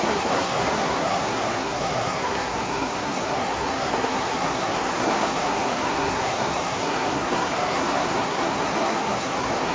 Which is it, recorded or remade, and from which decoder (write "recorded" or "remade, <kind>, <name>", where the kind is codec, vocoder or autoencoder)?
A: remade, codec, SNAC